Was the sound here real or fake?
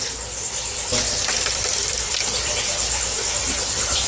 fake